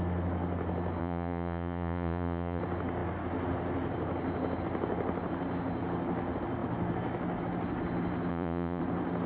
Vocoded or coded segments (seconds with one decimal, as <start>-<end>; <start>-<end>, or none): 1.0-2.6; 8.3-8.8